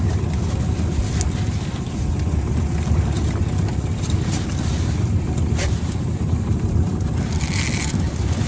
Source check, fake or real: real